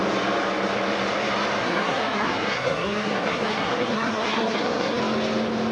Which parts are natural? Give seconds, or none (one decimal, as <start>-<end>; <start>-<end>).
0.0-1.6; 5.0-5.7